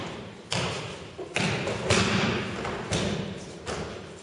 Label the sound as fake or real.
real